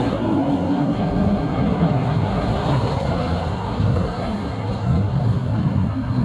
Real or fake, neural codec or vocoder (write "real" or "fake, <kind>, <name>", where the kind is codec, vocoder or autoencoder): fake, codec, SNAC